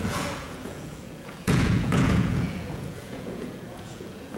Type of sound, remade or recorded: remade